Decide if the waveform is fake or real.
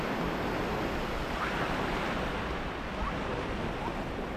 real